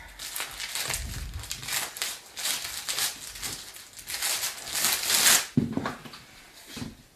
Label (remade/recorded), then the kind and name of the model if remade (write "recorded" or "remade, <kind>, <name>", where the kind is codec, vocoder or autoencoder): recorded